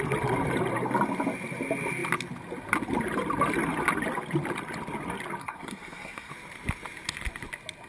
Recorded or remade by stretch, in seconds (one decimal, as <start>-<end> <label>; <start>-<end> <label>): 0.0-5.4 recorded; 5.4-6.3 remade; 6.3-7.9 recorded